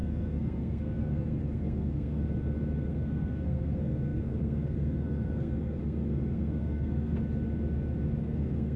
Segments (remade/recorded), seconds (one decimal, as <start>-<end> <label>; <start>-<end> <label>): 0.0-2.2 remade; 2.2-2.8 recorded; 2.8-7.2 remade; 7.2-8.2 recorded; 8.2-8.8 remade